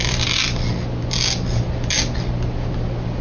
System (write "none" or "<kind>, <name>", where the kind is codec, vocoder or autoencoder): none